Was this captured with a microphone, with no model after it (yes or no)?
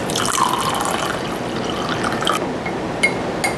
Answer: yes